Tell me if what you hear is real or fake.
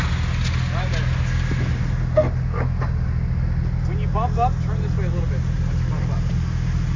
real